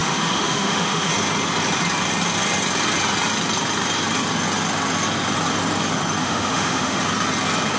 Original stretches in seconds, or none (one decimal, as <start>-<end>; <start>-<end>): 1.1-6.2; 7.0-7.8